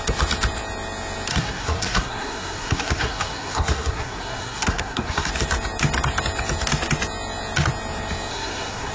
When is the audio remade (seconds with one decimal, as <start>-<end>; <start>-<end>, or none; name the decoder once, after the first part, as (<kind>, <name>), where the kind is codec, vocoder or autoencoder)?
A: 1.3-5.3 (codec, SNAC); 8.3-8.9